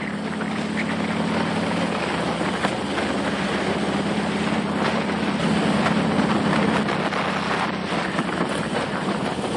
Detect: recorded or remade recorded